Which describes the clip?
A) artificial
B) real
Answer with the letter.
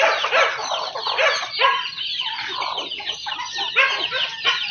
B